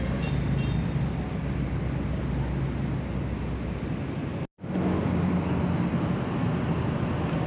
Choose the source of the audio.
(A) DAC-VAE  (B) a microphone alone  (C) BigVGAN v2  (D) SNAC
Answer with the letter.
B